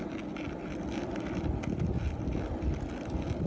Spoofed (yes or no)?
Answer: no